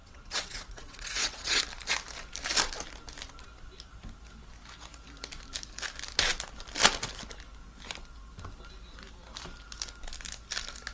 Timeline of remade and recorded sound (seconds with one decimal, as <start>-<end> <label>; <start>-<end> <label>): 0.0-1.6 remade; 1.6-10.9 recorded